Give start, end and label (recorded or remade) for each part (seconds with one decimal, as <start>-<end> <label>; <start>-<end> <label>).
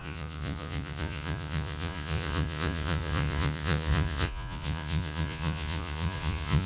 0.0-6.7 remade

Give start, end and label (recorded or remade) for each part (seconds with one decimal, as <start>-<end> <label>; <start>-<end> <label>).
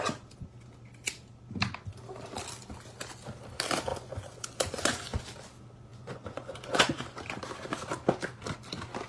0.0-3.9 recorded; 3.9-5.2 remade; 5.2-5.9 recorded; 5.9-7.2 remade; 7.2-9.1 recorded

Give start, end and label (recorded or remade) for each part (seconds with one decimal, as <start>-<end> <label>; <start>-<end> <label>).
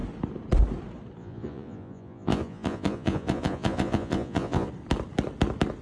0.0-1.2 recorded; 1.2-4.7 remade; 4.7-5.8 recorded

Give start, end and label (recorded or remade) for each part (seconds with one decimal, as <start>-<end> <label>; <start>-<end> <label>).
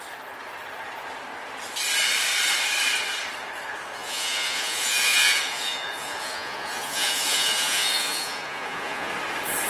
0.0-4.0 recorded; 4.0-9.1 remade; 9.1-9.7 recorded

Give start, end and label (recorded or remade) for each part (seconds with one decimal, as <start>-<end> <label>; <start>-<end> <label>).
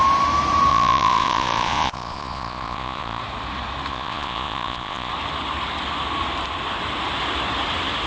0.0-0.7 recorded; 0.7-3.2 remade; 3.2-3.9 recorded; 3.9-5.1 remade; 5.1-8.1 recorded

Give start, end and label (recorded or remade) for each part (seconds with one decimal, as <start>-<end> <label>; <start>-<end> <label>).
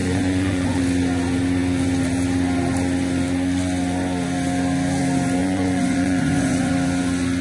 0.0-0.8 remade; 0.8-5.4 recorded; 5.4-6.7 remade; 6.7-7.4 recorded